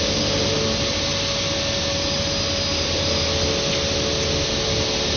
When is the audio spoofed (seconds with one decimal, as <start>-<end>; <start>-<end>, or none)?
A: none

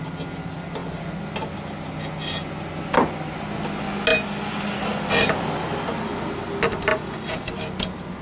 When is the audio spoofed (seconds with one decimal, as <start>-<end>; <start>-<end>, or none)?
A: 6.9-7.5

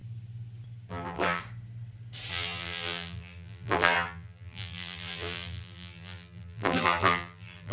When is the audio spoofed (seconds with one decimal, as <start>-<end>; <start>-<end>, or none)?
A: 0.9-1.4; 2.3-7.7

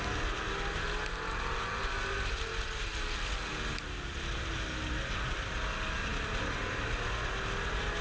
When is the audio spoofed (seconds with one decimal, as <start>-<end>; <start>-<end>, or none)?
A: none

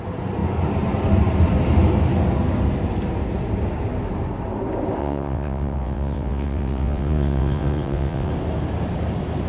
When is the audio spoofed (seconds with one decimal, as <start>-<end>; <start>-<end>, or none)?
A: 5.0-8.3

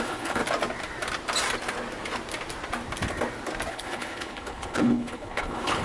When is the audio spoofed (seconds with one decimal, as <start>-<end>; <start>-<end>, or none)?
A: 0.0-0.4; 3.7-5.8